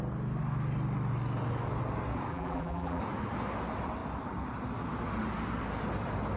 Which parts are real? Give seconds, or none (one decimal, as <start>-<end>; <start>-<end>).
0.0-2.3; 3.0-6.4

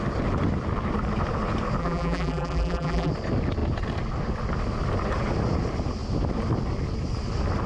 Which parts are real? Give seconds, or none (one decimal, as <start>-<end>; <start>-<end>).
0.0-1.8; 3.1-7.7